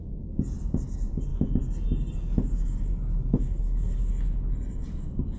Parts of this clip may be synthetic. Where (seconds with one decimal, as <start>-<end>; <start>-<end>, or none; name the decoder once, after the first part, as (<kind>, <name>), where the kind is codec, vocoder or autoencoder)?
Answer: 3.1-4.1 (codec, HILCodec)